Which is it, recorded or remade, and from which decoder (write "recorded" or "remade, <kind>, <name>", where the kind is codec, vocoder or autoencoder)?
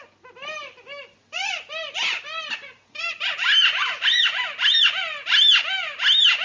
recorded